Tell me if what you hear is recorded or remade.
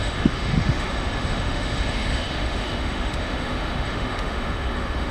remade